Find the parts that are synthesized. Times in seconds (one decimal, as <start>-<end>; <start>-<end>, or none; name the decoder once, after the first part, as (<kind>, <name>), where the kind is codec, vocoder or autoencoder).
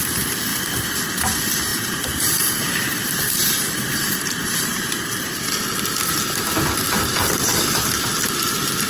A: 1.7-5.5 (vocoder, BigVGAN v2)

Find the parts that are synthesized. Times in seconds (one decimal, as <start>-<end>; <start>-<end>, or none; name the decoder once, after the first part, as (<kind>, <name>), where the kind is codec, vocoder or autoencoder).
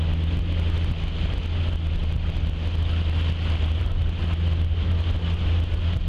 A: none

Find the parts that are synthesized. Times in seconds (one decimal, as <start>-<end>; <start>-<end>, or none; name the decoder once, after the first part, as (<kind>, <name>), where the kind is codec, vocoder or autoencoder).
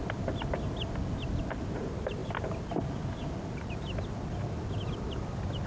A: 0.0-2.2 (vocoder, BigVGAN v2)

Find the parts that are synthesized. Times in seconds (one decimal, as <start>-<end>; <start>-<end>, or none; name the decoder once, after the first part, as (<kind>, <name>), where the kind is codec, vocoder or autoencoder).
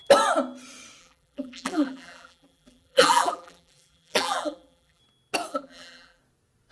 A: 1.0-5.0 (vocoder, BigVGAN v2); 5.5-6.2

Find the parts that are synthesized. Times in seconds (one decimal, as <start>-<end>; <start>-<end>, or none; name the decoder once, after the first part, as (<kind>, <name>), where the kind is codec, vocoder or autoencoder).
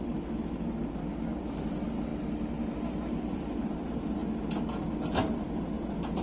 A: 0.0-2.1 (vocoder, BigVGAN v2); 2.7-4.2; 5.4-6.2